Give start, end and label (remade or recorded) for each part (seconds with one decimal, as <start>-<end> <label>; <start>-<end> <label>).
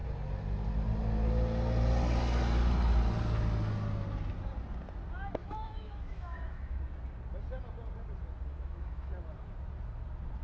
0.0-5.4 recorded; 5.4-6.8 remade; 6.8-8.5 recorded; 8.5-9.1 remade; 9.1-10.4 recorded